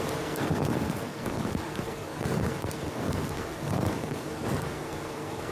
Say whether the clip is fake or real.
fake